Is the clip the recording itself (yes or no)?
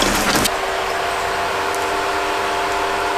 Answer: yes